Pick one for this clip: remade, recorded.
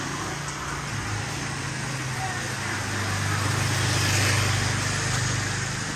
recorded